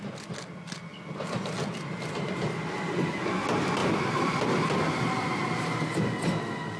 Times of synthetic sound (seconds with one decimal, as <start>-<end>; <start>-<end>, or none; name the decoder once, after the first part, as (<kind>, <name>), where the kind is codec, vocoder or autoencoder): none